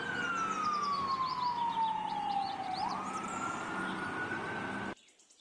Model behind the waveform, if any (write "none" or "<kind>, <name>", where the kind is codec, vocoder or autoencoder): none